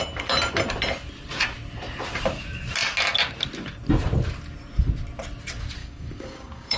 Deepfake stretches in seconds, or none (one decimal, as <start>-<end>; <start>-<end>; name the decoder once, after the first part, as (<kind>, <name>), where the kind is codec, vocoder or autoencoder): 5.8-6.8 (codec, DAC)